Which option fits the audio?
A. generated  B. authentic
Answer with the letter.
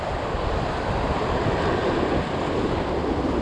B